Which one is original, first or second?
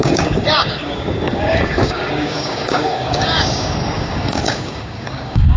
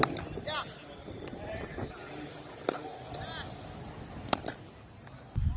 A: second